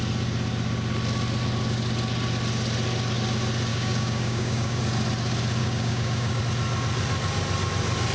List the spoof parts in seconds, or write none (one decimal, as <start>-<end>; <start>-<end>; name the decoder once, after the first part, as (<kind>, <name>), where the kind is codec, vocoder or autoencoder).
3.7-4.8 (codec, DAC); 5.6-6.4